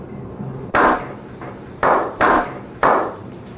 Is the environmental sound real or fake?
fake